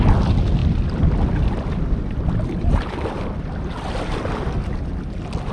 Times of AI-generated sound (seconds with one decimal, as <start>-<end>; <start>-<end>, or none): 0.6-3.9